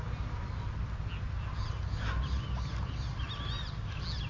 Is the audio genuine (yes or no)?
yes